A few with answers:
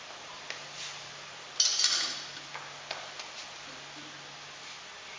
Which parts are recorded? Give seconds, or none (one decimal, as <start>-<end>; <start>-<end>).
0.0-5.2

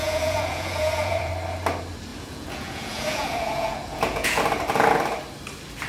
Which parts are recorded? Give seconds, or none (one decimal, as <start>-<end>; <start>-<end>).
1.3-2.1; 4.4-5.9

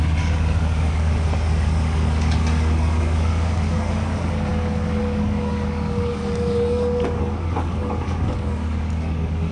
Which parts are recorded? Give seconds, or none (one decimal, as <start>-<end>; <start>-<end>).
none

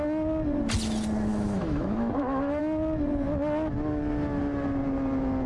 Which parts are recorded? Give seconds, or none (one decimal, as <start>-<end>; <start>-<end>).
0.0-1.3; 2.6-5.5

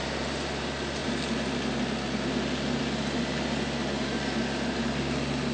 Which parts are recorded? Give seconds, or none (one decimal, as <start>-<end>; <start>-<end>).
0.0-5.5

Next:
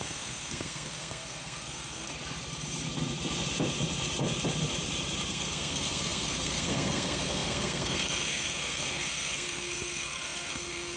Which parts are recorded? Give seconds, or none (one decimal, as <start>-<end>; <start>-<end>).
2.1-5.3